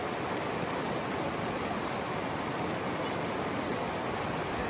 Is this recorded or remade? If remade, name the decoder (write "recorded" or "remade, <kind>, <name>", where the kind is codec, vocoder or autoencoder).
recorded